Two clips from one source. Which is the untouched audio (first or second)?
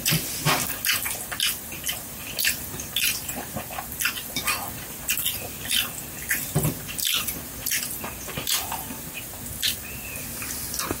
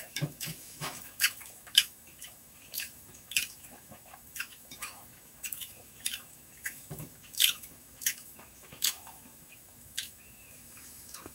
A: first